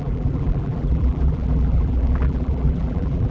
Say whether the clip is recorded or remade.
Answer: remade